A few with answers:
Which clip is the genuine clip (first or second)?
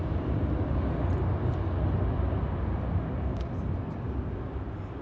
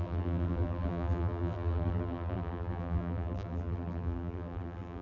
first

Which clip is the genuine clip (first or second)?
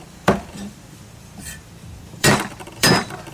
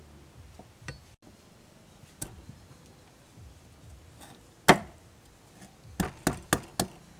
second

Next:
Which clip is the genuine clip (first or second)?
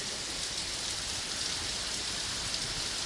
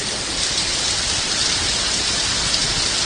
first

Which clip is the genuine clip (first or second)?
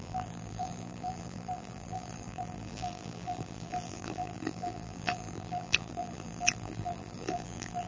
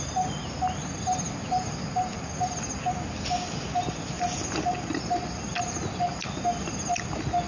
second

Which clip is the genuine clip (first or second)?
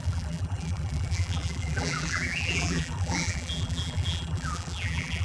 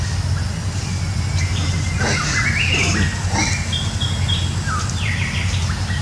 second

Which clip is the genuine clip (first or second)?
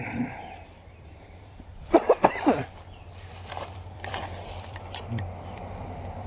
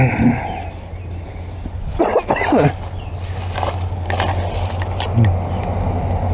second